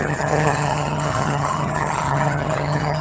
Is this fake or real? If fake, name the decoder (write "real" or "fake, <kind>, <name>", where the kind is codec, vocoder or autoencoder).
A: fake, vocoder, HiFi-GAN